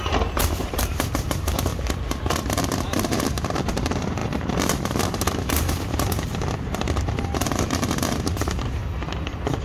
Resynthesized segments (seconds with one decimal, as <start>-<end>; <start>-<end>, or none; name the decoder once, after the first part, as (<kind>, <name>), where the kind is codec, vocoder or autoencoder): 0.0-1.7 (vocoder, BigVGAN v2); 2.5-8.8